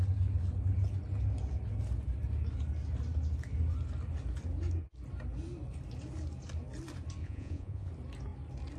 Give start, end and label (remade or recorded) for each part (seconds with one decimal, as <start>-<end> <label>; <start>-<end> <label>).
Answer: 0.0-7.2 recorded; 7.2-7.9 remade; 7.9-8.8 recorded